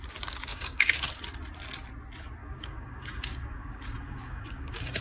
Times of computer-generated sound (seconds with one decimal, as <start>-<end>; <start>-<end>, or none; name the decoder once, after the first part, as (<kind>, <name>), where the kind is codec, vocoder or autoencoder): 0.5-1.1 (codec, DAC); 2.4-5.0